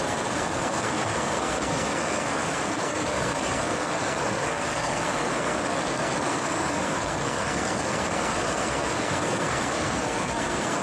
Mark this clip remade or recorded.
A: remade